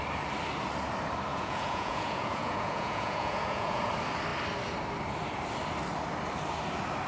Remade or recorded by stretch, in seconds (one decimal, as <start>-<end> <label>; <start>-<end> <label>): 0.0-1.3 recorded; 1.3-3.9 remade; 3.9-7.1 recorded